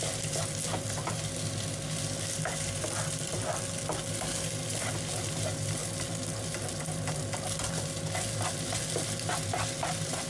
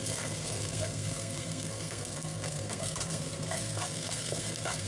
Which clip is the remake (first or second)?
second